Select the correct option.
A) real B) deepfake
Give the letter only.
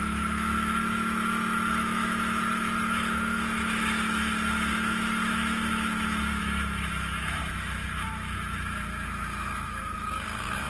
B